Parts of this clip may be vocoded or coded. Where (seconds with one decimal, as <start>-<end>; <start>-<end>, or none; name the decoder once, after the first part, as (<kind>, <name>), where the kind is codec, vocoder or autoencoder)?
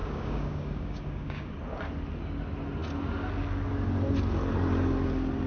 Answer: 0.0-1.5 (codec, DAC)